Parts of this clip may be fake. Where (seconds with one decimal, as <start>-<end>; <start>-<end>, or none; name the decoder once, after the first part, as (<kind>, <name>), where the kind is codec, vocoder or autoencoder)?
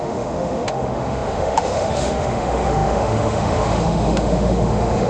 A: 0.0-5.1 (autoencoder, DAC-VAE)